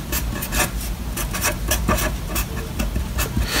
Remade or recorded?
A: recorded